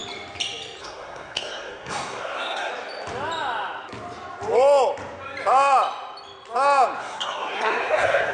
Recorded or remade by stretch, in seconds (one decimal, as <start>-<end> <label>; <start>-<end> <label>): 0.0-0.8 recorded; 0.8-2.7 remade; 2.7-7.0 recorded; 7.0-8.3 remade